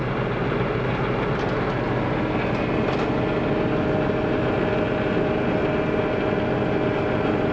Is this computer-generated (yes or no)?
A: no